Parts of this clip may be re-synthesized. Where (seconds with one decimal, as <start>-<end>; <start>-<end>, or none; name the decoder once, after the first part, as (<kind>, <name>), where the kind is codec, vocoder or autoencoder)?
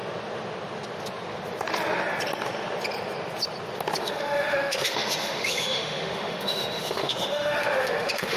4.0-8.4 (autoencoder, DAC-VAE)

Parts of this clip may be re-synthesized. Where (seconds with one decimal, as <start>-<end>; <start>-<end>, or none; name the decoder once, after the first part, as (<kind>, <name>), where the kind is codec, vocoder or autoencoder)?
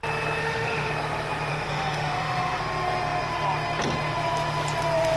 0.4-0.9 (autoencoder, DAC-VAE); 1.5-2.6